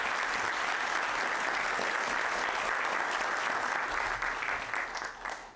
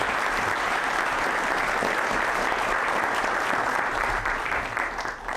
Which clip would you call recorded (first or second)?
first